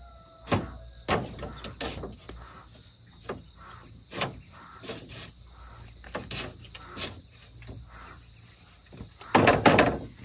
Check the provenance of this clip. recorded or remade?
recorded